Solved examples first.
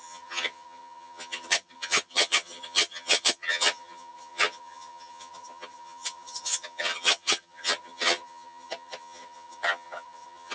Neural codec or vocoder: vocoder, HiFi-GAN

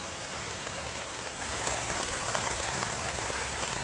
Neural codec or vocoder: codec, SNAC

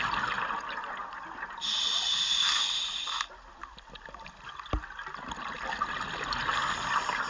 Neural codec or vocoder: none